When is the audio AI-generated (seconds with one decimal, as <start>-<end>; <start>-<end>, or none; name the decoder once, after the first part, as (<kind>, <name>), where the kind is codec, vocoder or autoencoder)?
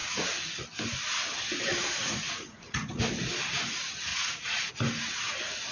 0.0-0.5 (vocoder, Vocos); 2.0-3.0; 4.1-4.7